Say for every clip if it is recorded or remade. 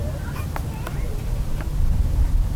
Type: remade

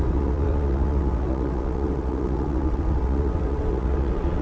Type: remade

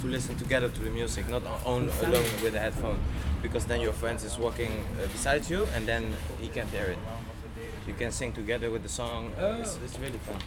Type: remade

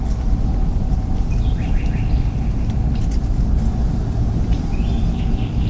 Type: recorded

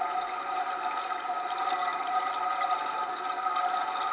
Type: recorded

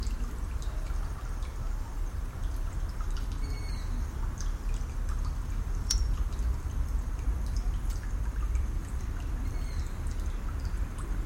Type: remade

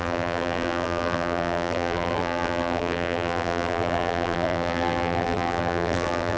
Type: remade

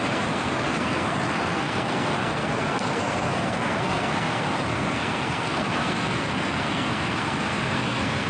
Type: remade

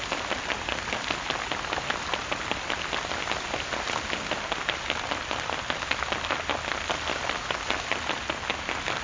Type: recorded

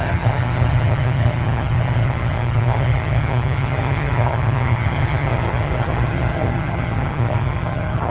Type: remade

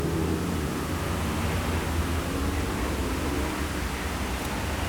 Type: recorded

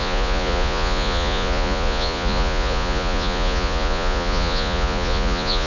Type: remade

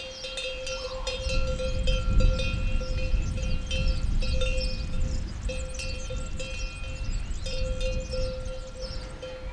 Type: recorded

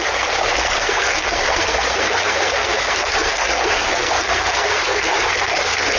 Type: remade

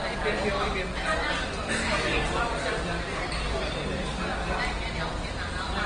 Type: recorded